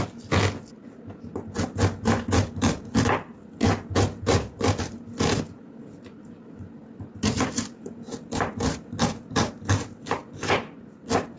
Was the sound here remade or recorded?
recorded